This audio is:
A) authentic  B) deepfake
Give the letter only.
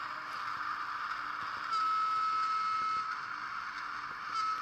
A